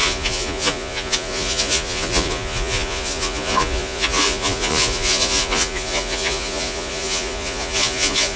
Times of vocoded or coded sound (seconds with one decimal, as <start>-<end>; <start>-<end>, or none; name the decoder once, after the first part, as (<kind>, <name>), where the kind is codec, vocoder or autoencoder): 0.0-8.4 (vocoder, Vocos)